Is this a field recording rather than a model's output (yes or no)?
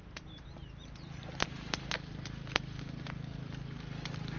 yes